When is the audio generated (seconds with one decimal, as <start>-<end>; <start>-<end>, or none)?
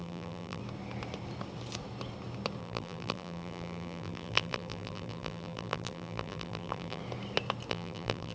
0.0-0.6; 2.6-7.0; 7.7-8.3